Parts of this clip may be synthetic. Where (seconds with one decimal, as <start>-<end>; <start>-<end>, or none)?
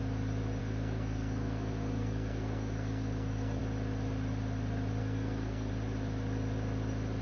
0.6-3.6; 5.0-5.7